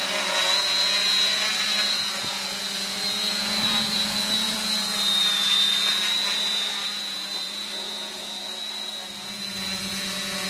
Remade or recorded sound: remade